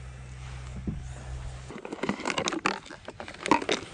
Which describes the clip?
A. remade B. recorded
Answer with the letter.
B